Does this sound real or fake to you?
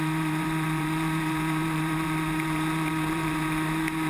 fake